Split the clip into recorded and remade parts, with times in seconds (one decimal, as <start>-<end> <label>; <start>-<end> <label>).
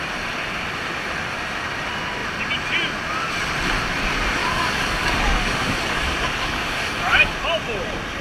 0.0-4.4 recorded; 4.4-7.3 remade; 7.3-8.2 recorded